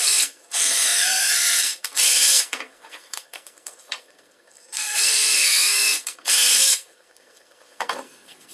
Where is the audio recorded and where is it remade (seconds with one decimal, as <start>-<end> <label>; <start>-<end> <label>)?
0.0-8.5 remade

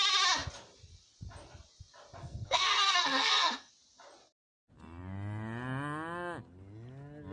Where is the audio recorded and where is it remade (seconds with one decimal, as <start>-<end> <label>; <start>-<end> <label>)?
0.0-2.2 recorded; 2.2-3.7 remade; 3.7-7.3 recorded